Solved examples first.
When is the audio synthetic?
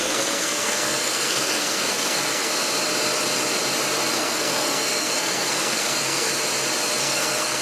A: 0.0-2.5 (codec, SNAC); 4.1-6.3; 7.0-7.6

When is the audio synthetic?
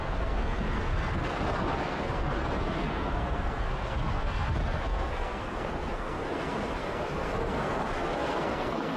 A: 0.0-9.0 (codec, SNAC)